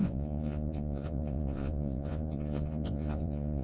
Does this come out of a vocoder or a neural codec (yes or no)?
yes